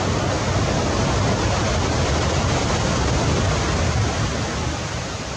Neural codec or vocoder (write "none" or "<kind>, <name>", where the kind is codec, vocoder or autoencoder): none